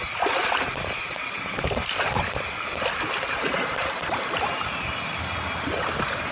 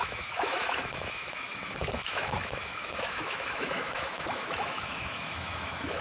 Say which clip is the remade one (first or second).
second